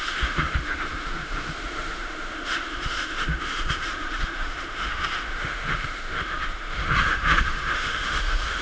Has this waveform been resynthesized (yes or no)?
yes